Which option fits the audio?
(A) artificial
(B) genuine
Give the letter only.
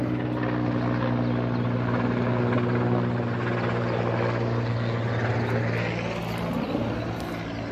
B